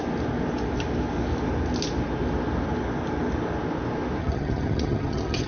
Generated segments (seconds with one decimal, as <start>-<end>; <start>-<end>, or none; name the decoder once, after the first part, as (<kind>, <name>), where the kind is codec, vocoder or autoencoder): 4.2-5.5 (vocoder, HiFi-GAN)